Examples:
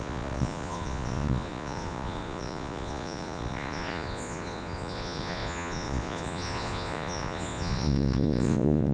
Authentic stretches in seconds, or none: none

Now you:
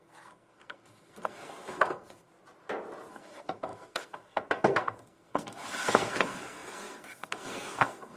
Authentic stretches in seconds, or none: 2.3-3.1

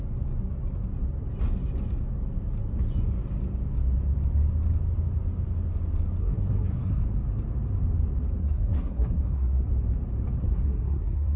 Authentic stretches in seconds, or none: 0.0-6.2; 7.0-8.4; 9.7-10.5